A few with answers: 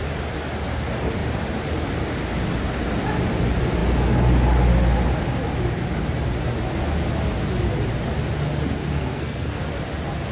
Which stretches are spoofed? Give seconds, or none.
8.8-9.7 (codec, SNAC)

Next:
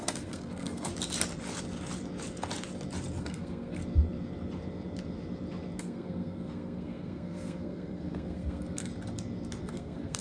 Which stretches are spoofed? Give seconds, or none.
0.0-0.9 (codec, SNAC); 3.2-3.8; 5.8-8.9; 9.6-10.2

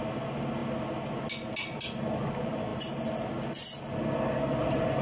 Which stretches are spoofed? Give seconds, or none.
none

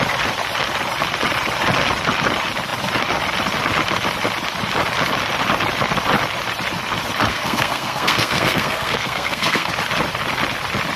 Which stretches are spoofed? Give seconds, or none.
7.3-9.7 (codec, SNAC)

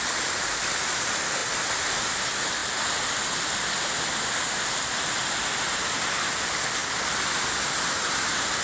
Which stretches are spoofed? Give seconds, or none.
none

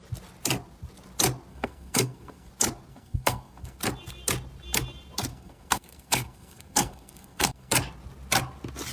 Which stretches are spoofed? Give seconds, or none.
1.5-2.5 (codec, SNAC); 2.9-3.8; 5.3-7.7

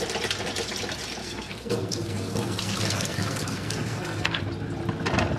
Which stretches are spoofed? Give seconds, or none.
1.2-4.4 (codec, SNAC)

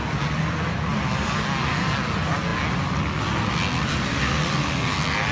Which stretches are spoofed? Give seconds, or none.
none